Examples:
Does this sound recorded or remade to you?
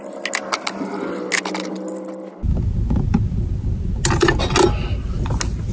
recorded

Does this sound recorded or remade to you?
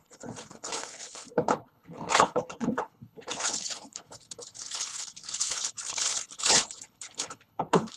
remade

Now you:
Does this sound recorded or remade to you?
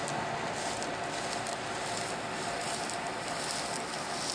recorded